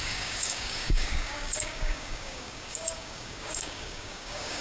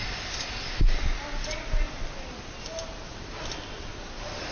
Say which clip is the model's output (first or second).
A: first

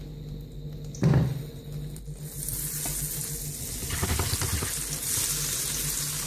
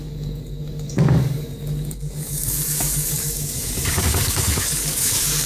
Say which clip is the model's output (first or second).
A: second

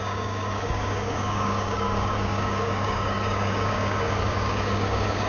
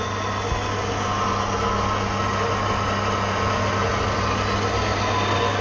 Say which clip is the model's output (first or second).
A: first